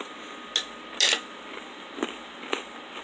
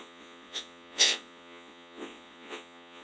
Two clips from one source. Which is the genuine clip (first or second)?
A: first